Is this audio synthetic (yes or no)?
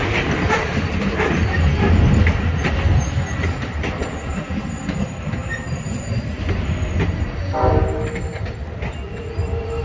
no